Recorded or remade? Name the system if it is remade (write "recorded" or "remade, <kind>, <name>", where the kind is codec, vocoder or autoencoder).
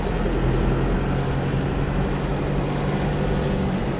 recorded